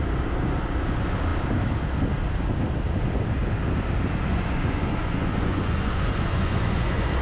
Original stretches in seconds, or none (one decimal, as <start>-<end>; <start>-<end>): 0.0-4.3